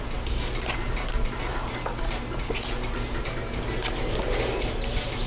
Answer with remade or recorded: recorded